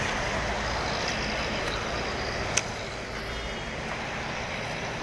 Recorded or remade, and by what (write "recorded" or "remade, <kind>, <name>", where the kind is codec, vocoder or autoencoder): recorded